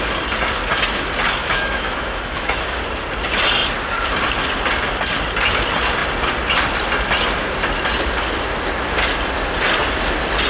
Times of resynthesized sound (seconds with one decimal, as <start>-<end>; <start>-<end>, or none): 1.4-2.8